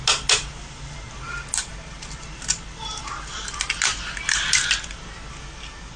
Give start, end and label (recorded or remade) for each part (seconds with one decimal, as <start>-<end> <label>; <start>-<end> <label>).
0.0-6.0 recorded